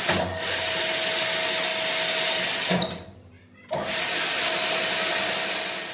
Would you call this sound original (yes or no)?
yes